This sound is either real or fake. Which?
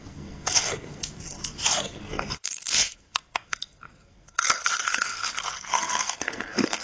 fake